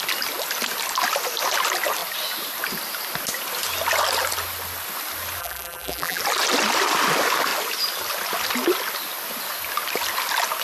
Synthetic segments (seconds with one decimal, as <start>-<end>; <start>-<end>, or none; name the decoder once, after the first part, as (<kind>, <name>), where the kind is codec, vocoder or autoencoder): 5.4-6.2 (vocoder, BigVGAN v2)